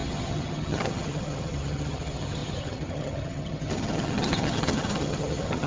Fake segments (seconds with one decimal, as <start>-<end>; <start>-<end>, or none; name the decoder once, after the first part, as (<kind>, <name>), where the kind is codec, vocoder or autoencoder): 0.0-5.7 (vocoder, HiFi-GAN)